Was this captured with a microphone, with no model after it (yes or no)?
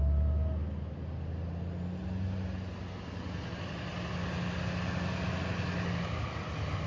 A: yes